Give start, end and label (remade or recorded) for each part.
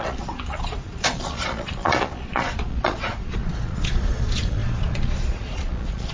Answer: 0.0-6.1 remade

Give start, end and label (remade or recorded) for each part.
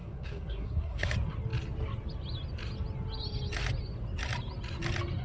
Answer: 0.0-1.1 remade; 1.1-5.2 recorded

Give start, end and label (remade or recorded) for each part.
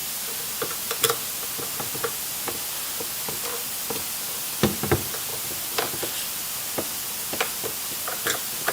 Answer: 0.0-8.7 recorded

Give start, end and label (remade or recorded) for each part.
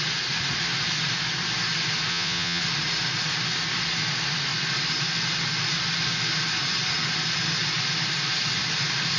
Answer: 0.0-2.1 recorded; 2.1-2.6 remade; 2.6-9.2 recorded